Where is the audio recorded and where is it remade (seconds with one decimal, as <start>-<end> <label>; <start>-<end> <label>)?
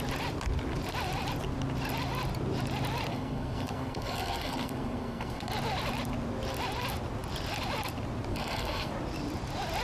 0.0-3.1 recorded; 3.1-5.5 remade; 5.5-8.3 recorded; 8.3-8.9 remade; 8.9-9.8 recorded